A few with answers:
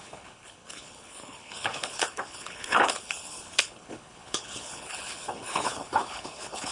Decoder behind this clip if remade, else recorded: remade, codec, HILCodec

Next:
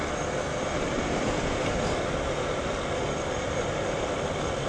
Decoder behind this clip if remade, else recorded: recorded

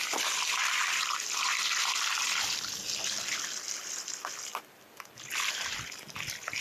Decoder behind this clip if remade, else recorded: recorded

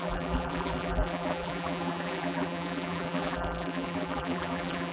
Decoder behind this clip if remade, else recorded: remade, vocoder, BigVGAN v2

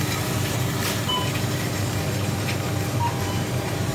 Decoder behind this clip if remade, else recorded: recorded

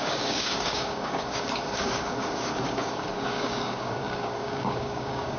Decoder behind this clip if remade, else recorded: remade, codec, DAC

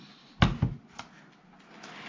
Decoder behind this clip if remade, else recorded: recorded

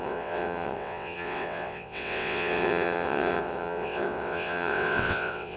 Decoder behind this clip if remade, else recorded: remade, vocoder, WaveNeXt